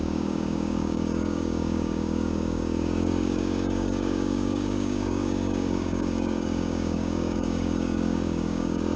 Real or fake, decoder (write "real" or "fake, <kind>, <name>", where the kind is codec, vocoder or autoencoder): fake, codec, DAC